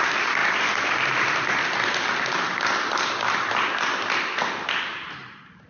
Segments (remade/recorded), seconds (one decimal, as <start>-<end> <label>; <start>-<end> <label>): 0.0-4.9 recorded; 4.9-5.7 remade